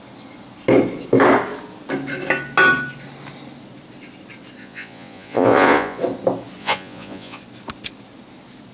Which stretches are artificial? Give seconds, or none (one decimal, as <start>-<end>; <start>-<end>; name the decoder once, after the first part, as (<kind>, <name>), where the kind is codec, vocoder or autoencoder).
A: 4.6-6.0 (vocoder, Vocos); 6.6-7.4